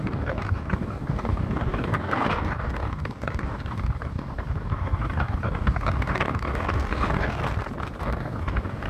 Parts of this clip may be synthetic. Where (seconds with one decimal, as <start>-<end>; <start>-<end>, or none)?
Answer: 0.0-7.4; 8.0-8.9